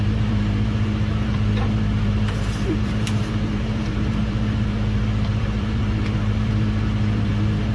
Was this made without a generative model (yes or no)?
no